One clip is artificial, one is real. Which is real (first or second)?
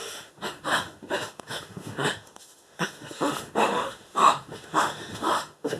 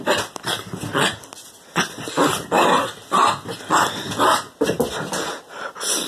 second